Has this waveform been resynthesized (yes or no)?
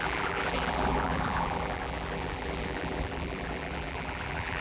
yes